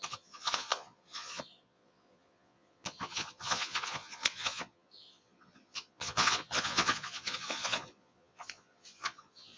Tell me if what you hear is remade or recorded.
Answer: remade